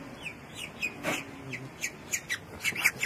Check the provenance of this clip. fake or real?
real